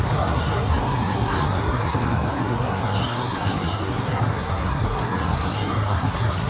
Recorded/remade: remade